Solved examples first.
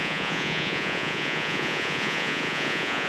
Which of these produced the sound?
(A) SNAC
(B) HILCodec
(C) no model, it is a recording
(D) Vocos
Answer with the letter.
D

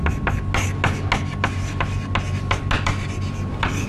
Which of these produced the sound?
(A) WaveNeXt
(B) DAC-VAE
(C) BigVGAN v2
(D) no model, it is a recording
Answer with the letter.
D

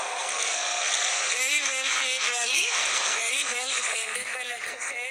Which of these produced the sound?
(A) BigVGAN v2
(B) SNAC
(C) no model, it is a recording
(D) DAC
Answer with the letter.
B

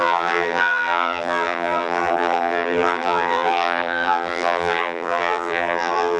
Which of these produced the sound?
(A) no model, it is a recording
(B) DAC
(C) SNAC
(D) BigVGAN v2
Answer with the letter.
D